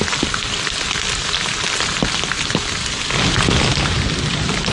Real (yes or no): yes